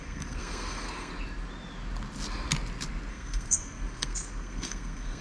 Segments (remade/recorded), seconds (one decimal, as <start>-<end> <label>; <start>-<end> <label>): 0.0-1.1 remade; 1.1-3.1 recorded; 3.1-5.2 remade